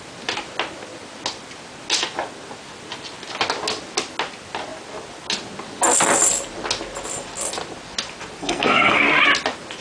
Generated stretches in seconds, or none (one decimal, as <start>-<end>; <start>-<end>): 8.4-9.0